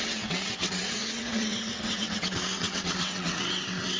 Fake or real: fake